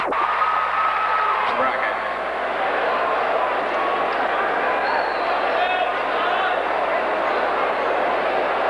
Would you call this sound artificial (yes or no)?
no